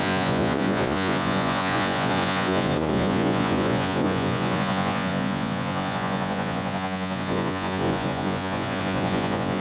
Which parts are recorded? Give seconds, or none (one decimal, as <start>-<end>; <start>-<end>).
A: none